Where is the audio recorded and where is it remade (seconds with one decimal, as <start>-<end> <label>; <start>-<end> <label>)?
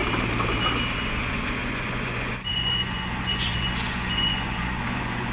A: 0.0-0.9 recorded; 0.9-5.3 remade